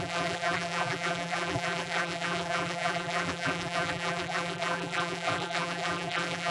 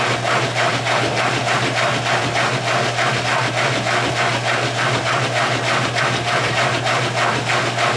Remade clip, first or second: first